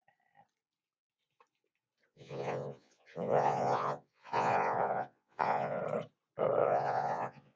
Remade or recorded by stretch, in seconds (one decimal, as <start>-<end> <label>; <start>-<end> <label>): 0.0-2.1 recorded; 2.1-5.8 remade; 5.8-6.6 recorded; 6.6-7.6 remade